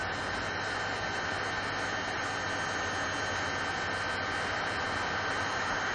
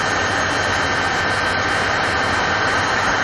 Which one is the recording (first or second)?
first